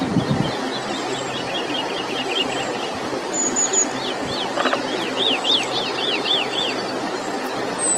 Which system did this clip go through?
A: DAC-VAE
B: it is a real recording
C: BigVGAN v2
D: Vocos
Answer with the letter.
B